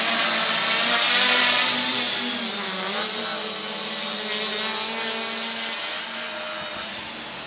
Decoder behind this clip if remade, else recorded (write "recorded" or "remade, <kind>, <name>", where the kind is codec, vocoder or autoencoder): recorded